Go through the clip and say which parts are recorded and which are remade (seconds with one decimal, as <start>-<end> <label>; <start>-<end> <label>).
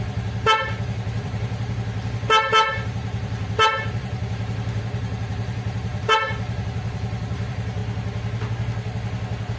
0.0-7.8 remade; 7.8-9.6 recorded